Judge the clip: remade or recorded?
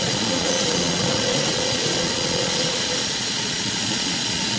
remade